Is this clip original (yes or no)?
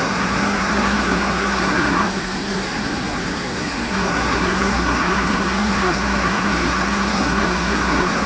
no